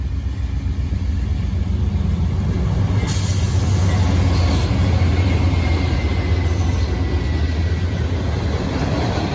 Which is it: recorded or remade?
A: recorded